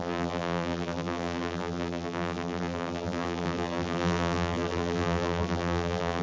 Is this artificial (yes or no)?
yes